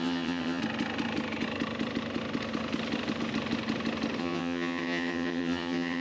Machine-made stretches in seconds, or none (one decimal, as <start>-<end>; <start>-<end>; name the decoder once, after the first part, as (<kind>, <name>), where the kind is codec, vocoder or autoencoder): 0.0-0.6 (vocoder, HiFi-GAN); 4.2-6.0